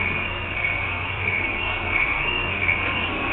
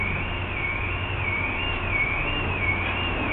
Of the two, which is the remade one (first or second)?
first